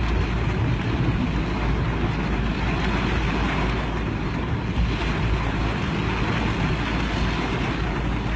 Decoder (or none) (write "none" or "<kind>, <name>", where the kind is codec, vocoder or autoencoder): none